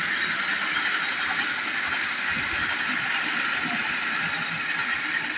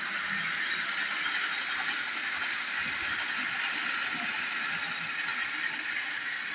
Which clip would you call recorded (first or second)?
second